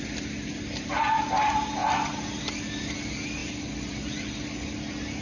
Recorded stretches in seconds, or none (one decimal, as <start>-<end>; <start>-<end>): 0.0-5.2